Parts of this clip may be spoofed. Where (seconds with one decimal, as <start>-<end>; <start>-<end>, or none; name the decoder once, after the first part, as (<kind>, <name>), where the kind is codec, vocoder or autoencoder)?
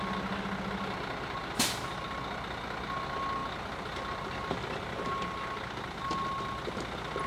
none